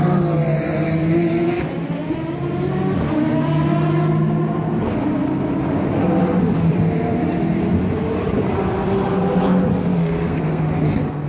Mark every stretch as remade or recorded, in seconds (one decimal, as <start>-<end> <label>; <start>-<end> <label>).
0.0-9.9 recorded; 9.9-10.6 remade; 10.6-11.3 recorded